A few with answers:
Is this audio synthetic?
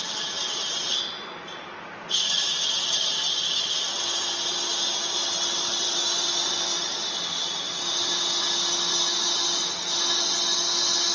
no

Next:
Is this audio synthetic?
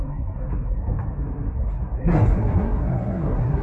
yes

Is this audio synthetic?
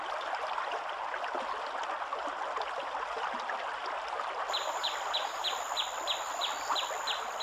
no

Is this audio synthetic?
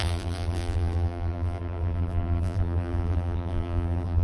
yes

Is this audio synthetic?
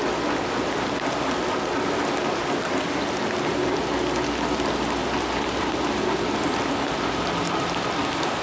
no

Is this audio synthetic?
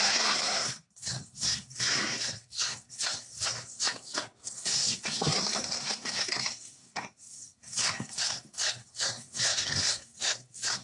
yes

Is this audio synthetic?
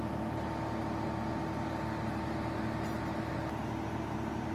no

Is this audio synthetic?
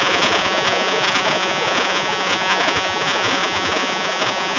yes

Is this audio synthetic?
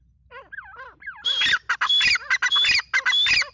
no